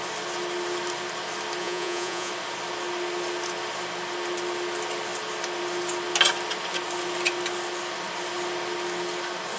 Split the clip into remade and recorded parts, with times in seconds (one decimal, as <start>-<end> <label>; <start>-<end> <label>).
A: 0.0-1.6 recorded; 1.6-2.3 remade; 2.3-9.6 recorded